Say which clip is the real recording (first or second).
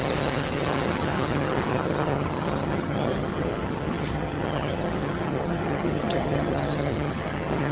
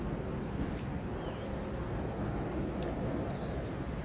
second